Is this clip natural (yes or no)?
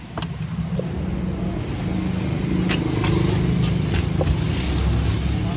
yes